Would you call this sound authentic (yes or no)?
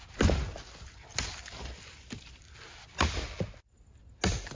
yes